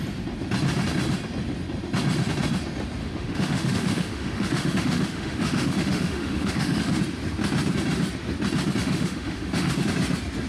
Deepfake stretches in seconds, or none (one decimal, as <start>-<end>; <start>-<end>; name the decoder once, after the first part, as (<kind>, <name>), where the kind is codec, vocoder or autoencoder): 3.0-7.0 (autoencoder, DAC-VAE); 8.8-9.7